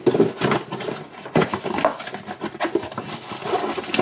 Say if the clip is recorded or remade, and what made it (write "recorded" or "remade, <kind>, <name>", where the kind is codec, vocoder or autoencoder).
recorded